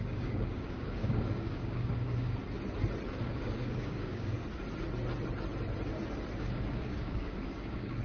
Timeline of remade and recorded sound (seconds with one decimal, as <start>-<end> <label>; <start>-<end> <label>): 0.0-2.4 remade; 2.4-3.2 recorded; 3.2-4.4 remade; 4.4-6.4 recorded; 6.4-8.0 remade